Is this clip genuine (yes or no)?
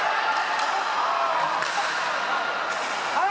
yes